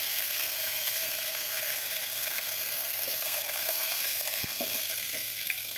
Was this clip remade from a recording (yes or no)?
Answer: yes